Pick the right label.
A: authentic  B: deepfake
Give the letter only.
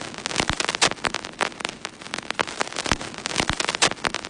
A